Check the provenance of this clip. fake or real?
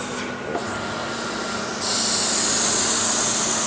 real